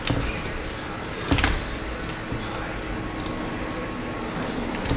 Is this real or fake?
real